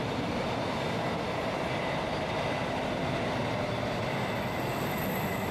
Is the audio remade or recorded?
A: recorded